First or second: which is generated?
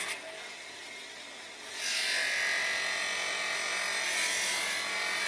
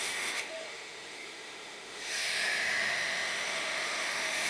second